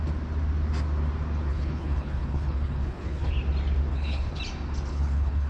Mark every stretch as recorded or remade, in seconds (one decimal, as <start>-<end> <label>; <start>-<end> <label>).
0.0-1.5 recorded; 1.5-3.3 remade; 3.3-3.9 recorded; 3.9-4.4 remade; 4.4-4.9 recorded; 4.9-5.5 remade